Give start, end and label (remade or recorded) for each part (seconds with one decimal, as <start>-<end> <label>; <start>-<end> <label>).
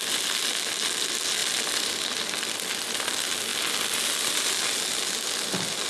0.0-1.4 recorded; 1.4-3.0 remade; 3.0-5.9 recorded